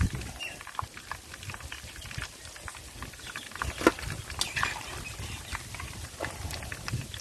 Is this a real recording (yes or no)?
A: yes